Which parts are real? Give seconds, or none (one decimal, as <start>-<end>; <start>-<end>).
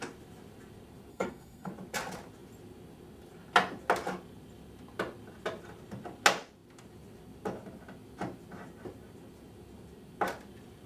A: 0.0-1.1; 1.7-10.9